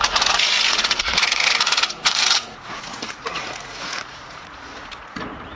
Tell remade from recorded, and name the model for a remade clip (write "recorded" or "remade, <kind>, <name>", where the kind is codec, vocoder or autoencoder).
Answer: remade, vocoder, Vocos